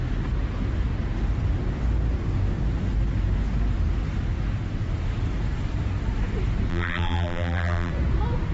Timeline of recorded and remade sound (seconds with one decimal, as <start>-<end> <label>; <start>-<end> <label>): 0.0-6.7 recorded; 6.7-7.9 remade; 7.9-8.5 recorded